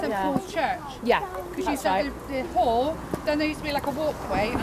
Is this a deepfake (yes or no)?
no